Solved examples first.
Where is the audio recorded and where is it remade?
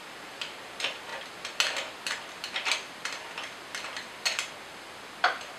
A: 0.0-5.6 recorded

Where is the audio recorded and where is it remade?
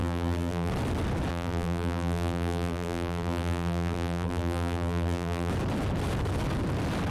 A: 0.0-0.7 remade; 0.7-1.3 recorded; 1.3-5.5 remade; 5.5-7.1 recorded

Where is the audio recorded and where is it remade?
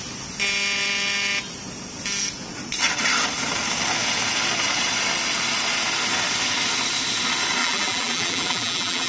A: 0.0-7.6 recorded; 7.6-9.1 remade